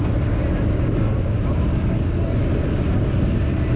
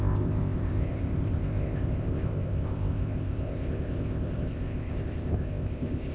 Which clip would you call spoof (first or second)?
second